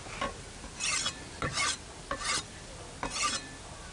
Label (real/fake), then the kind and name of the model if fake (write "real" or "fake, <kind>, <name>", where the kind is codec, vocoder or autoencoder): real